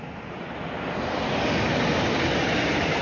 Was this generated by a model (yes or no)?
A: no